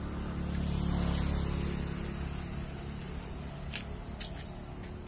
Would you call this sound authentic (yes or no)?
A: yes